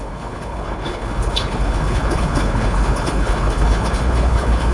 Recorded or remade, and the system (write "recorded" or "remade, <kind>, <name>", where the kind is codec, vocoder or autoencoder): remade, codec, HILCodec